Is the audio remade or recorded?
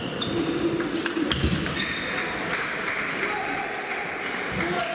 recorded